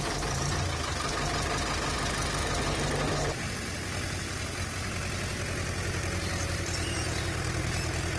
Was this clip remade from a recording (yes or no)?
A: no